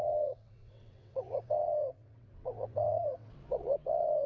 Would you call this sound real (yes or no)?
no